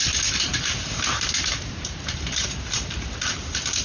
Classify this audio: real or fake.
fake